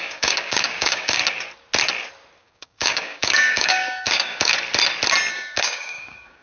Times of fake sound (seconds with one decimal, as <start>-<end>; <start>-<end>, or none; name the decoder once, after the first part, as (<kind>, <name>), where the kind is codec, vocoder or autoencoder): 0.0-1.2 (codec, DAC); 2.4-4.5; 5.3-6.4